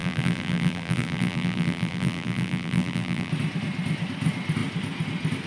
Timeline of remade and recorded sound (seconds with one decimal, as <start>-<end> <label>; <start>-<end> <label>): 0.0-3.3 remade; 3.3-5.5 recorded